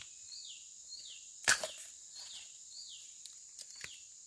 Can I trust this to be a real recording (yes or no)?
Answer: yes